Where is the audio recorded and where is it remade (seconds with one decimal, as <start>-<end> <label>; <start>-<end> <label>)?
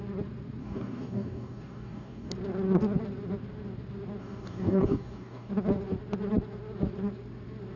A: 0.0-0.6 recorded; 0.6-2.3 remade; 2.3-4.2 recorded; 4.2-5.5 remade; 5.5-7.8 recorded